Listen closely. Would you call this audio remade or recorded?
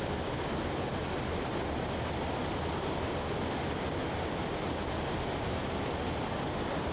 recorded